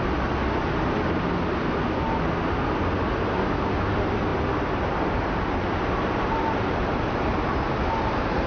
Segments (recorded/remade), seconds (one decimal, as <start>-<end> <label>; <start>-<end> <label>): 0.0-8.5 recorded